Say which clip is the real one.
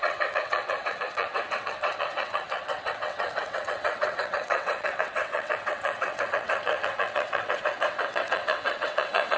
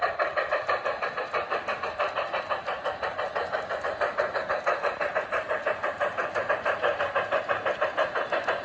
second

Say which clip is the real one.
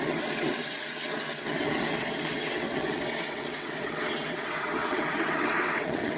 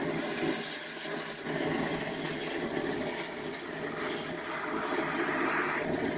second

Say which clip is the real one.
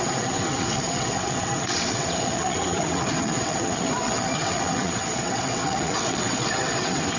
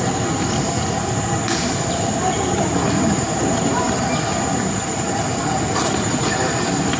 second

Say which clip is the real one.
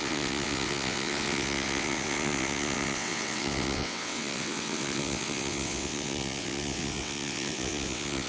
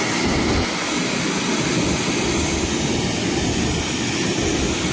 second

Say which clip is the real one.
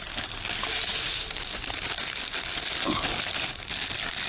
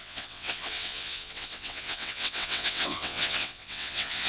first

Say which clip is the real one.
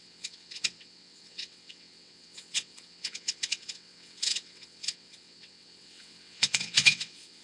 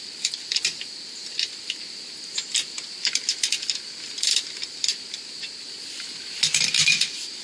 second